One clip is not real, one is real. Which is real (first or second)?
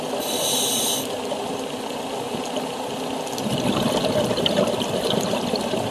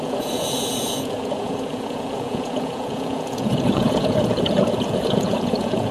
first